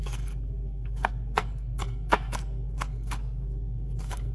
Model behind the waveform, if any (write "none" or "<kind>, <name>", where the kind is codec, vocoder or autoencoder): codec, SNAC